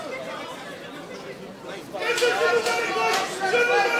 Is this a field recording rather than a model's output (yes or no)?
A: yes